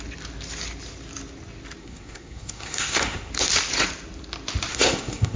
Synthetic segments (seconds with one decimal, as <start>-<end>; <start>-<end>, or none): 1.8-3.3; 4.7-5.4